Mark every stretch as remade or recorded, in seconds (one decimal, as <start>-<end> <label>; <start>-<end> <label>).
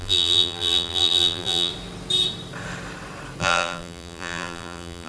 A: 0.0-1.7 remade; 1.7-3.4 recorded; 3.4-5.1 remade